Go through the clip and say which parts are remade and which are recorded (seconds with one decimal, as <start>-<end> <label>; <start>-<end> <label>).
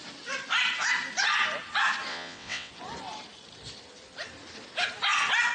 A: 0.0-2.1 recorded; 2.1-2.7 remade; 2.7-5.5 recorded